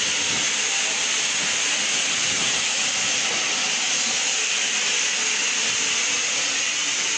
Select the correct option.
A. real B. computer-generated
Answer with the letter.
A